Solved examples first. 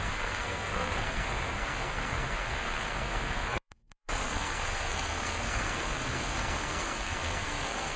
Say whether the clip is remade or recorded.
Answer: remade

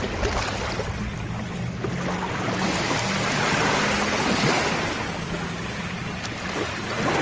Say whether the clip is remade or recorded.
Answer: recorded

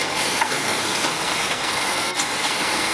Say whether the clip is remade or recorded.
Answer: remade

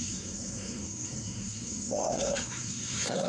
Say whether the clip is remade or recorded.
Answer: remade